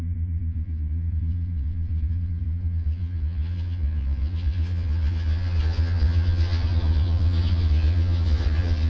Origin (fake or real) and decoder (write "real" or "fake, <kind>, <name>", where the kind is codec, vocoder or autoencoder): fake, vocoder, Vocos